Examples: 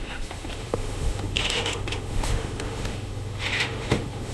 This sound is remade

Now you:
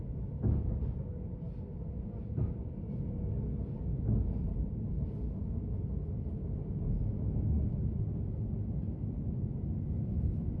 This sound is recorded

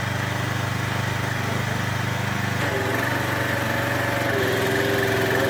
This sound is recorded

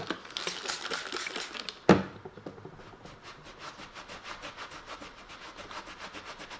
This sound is recorded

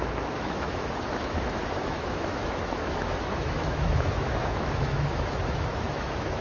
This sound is remade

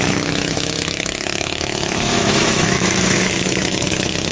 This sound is remade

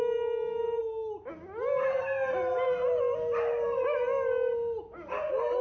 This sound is recorded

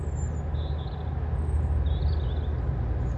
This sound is recorded